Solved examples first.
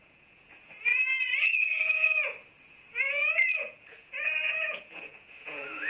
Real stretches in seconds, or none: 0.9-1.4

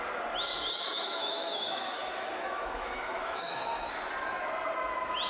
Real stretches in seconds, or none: 0.0-0.7; 3.9-5.3

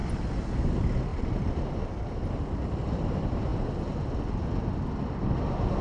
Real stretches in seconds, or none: 0.0-5.8

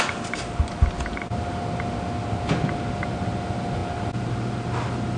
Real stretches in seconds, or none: 0.0-5.2